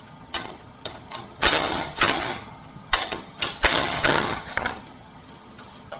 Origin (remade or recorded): remade